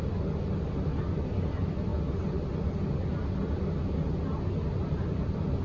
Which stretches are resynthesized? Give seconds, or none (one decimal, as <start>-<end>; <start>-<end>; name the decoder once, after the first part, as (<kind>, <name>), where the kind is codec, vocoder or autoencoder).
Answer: none